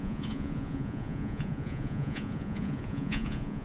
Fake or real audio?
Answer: fake